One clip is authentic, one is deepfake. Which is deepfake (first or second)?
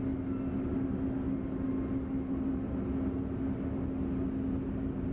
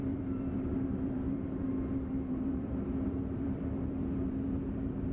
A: second